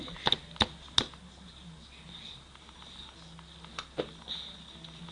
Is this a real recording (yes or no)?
yes